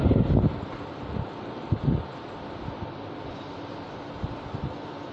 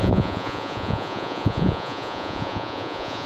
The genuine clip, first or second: first